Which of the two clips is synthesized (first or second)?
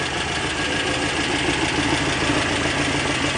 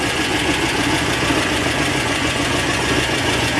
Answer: second